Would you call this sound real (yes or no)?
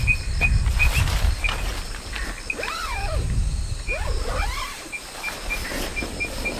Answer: yes